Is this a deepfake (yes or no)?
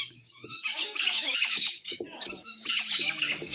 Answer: yes